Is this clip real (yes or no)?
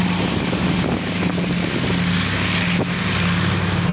yes